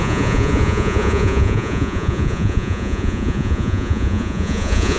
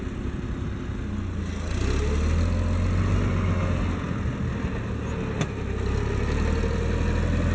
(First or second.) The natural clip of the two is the second